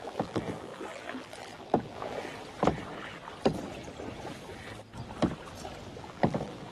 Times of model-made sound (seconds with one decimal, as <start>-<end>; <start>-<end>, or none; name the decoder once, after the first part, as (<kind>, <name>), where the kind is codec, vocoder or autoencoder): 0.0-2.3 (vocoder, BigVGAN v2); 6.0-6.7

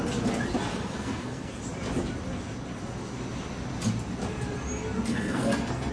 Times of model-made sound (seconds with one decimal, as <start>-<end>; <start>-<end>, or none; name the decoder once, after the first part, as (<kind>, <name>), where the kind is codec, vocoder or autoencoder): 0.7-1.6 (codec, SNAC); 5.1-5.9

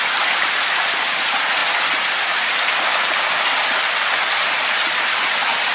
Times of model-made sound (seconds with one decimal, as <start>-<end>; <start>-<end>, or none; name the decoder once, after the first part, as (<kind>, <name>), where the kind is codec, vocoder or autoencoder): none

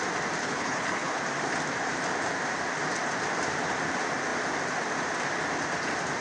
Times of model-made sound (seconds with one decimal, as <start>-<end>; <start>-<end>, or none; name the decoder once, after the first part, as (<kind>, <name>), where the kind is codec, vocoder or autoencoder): 0.4-1.2 (codec, HILCodec)

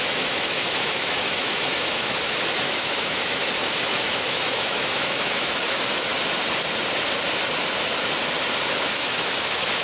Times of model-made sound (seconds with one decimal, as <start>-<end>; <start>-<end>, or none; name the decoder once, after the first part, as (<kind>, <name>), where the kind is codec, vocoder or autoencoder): 0.0-6.1 (autoencoder, DAC-VAE); 8.8-9.8